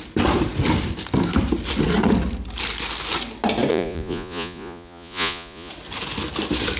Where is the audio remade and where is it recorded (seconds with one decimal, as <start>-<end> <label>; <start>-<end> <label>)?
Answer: 0.0-3.7 recorded; 3.7-5.7 remade; 5.7-6.8 recorded